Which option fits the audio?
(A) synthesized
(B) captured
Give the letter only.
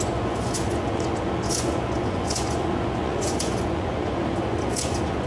A